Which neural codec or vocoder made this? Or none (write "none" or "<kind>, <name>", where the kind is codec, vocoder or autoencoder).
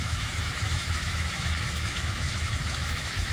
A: autoencoder, DAC-VAE